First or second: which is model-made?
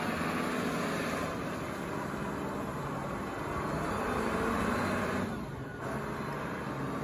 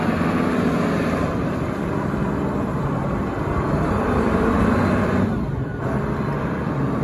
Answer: second